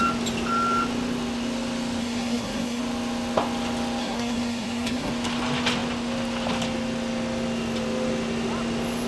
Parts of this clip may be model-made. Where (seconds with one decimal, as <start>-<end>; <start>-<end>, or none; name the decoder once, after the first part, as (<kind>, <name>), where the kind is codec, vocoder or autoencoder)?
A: 2.0-2.8 (codec, SNAC); 4.0-5.1